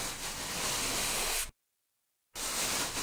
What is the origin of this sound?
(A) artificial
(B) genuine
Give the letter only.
B